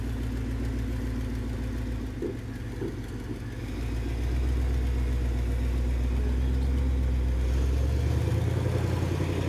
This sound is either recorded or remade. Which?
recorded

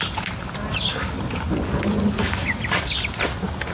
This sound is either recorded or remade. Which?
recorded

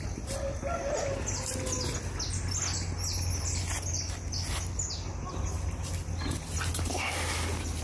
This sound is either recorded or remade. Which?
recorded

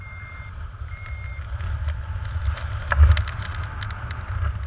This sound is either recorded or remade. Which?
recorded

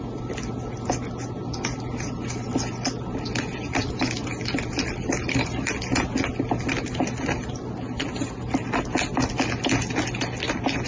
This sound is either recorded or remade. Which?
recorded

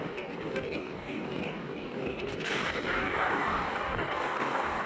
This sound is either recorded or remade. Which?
remade